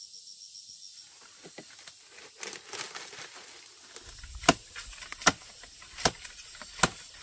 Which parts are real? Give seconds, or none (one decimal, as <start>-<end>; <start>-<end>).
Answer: 0.0-5.1; 6.1-7.2